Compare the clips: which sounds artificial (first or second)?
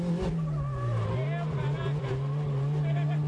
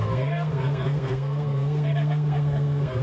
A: second